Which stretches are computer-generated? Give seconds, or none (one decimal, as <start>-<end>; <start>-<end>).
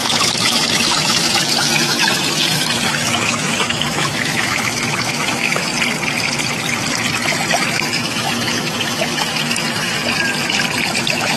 0.0-5.7; 7.6-10.0; 11.0-11.4